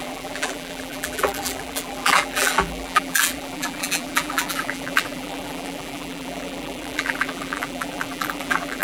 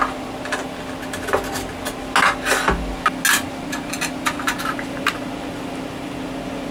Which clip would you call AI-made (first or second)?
first